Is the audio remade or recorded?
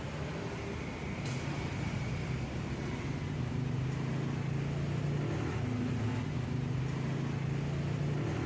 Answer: recorded